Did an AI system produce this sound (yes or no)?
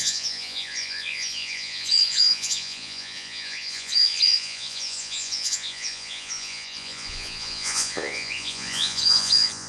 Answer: yes